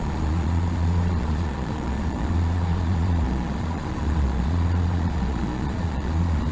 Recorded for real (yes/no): no